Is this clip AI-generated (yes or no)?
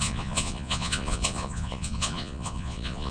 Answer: yes